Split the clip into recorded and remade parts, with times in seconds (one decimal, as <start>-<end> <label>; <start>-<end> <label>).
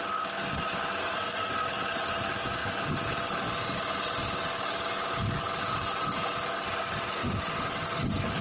0.0-1.0 recorded; 1.0-1.5 remade; 1.5-8.4 recorded